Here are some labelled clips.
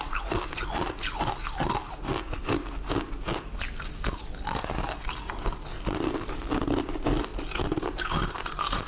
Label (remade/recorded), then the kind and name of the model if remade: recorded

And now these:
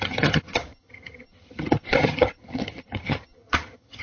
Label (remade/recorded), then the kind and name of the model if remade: remade, vocoder, HiFi-GAN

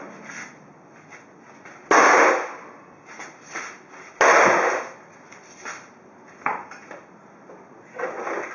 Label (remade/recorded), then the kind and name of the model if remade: recorded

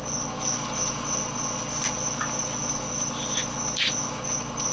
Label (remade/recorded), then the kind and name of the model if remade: recorded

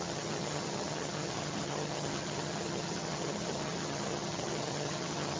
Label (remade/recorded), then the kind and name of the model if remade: remade, vocoder, HiFi-GAN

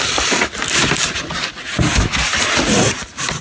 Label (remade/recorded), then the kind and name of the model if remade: recorded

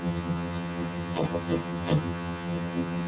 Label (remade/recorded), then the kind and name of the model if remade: remade, vocoder, HiFi-GAN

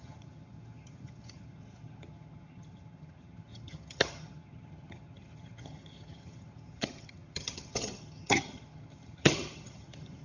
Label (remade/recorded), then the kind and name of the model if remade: remade, vocoder, HiFi-GAN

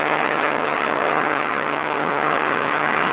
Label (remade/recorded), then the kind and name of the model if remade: remade, vocoder, HiFi-GAN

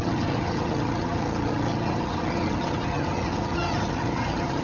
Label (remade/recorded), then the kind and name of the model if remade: remade, vocoder, HiFi-GAN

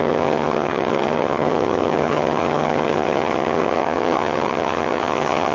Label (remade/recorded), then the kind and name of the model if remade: remade, vocoder, HiFi-GAN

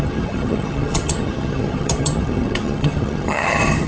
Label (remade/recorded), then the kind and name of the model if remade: remade, vocoder, HiFi-GAN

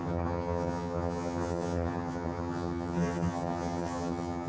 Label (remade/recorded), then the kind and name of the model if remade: remade, vocoder, HiFi-GAN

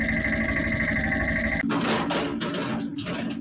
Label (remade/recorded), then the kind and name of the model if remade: recorded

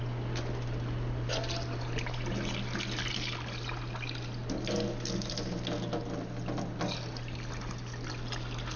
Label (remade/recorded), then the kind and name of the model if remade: recorded